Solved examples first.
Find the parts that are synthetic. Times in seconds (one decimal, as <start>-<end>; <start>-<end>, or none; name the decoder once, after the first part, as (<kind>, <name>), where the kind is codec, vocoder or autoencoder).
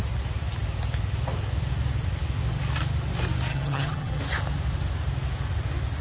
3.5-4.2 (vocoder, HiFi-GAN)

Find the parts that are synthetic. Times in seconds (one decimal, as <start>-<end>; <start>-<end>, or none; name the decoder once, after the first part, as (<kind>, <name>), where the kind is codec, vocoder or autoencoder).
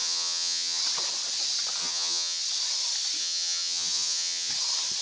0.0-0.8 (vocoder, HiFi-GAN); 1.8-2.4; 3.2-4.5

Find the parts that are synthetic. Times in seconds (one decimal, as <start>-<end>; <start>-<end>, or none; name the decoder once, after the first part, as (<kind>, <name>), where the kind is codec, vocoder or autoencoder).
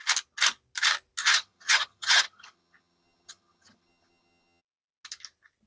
1.2-4.6 (vocoder, HiFi-GAN)